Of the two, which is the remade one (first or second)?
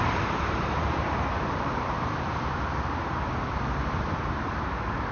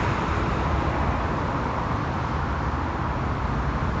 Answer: first